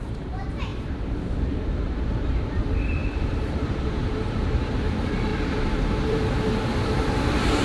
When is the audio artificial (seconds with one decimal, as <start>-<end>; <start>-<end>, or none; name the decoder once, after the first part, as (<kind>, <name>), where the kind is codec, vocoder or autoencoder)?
0.0-7.6 (vocoder, BigVGAN v2)